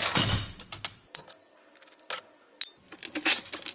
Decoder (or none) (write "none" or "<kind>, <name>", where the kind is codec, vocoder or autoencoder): none